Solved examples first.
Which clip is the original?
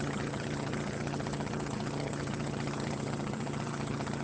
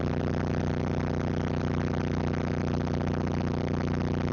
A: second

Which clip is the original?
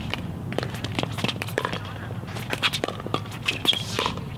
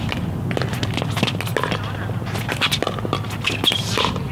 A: second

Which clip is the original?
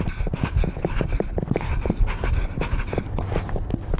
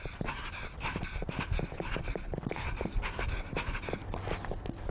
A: second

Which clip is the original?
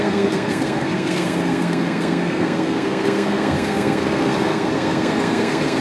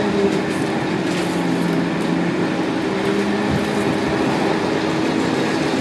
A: second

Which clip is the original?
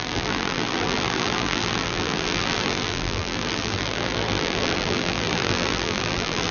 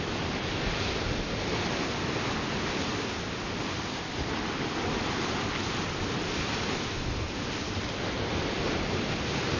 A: second